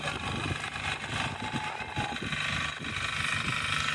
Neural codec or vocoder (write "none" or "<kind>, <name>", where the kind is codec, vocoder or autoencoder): none